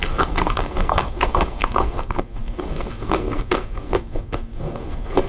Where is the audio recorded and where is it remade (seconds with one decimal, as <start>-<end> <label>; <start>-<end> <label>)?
0.0-5.3 remade